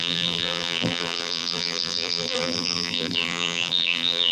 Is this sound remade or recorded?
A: remade